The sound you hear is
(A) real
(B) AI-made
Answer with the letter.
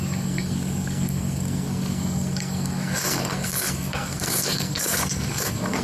B